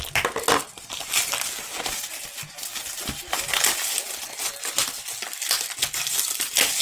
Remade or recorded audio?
recorded